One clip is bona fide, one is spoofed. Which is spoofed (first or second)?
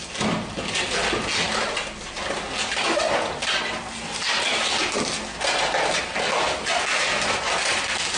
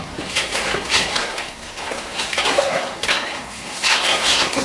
second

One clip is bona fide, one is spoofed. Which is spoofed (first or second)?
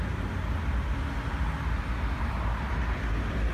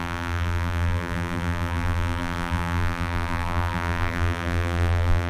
second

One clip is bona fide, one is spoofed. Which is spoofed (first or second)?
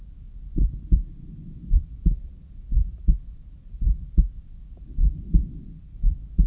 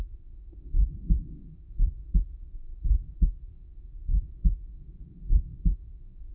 second